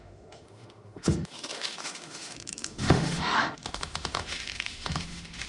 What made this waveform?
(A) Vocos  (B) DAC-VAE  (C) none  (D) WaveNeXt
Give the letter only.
B